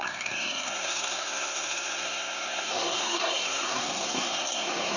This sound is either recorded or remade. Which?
remade